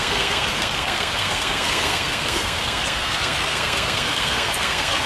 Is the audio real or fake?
fake